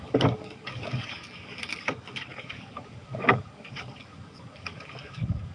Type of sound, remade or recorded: remade